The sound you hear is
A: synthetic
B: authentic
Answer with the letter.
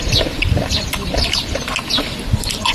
A